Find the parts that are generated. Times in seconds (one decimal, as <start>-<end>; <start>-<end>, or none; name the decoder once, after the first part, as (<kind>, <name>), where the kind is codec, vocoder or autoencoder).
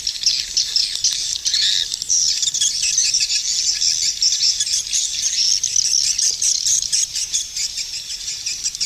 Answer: 6.1-7.4 (vocoder, BigVGAN v2)